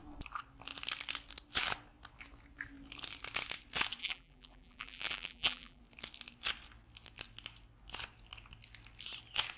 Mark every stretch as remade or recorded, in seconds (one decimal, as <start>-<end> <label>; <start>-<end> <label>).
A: 0.0-4.0 recorded; 4.0-5.8 remade; 5.8-9.6 recorded